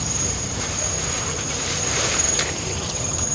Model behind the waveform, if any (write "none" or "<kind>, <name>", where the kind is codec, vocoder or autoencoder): vocoder, BigVGAN v2